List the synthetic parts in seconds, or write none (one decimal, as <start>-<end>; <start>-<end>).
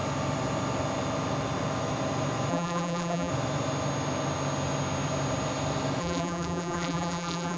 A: 2.5-3.3; 6.0-7.6